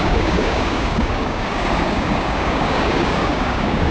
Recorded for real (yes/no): no